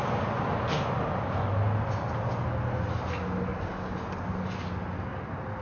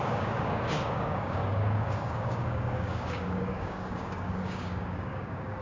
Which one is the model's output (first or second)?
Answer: second